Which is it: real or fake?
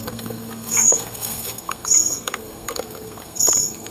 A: fake